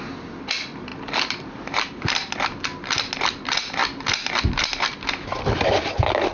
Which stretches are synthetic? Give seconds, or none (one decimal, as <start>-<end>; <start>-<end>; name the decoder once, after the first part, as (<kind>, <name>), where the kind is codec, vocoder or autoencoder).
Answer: none